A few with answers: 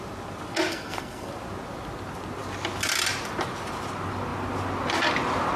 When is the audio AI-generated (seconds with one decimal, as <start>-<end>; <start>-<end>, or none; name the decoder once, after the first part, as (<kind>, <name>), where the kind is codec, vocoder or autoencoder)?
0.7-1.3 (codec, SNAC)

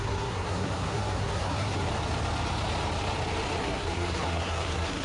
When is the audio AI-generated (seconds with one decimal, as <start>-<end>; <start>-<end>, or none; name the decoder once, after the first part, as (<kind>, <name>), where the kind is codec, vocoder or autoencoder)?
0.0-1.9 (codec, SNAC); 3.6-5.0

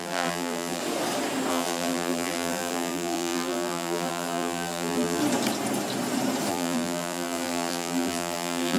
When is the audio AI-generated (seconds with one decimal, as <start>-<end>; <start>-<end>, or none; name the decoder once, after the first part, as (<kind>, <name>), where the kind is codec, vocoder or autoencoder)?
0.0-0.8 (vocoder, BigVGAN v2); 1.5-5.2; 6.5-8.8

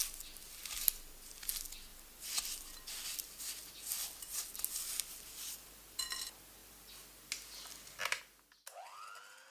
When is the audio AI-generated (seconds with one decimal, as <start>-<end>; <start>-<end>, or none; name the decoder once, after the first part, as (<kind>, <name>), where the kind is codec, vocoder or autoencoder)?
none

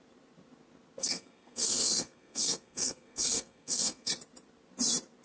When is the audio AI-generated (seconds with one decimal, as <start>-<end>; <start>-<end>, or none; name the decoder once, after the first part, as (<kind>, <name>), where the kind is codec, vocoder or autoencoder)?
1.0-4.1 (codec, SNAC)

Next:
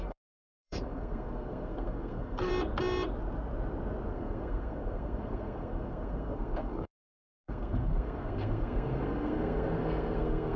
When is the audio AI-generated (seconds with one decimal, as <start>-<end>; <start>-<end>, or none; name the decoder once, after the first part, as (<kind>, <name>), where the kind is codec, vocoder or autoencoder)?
0.0-2.5 (codec, SNAC); 4.1-10.6

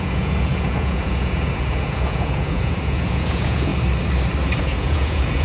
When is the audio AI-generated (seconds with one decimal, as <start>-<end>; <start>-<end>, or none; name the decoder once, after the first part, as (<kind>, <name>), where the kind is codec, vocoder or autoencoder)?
0.0-3.7 (vocoder, Vocos); 4.6-5.4